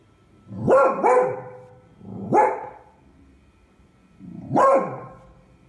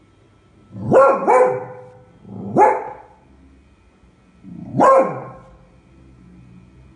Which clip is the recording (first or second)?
second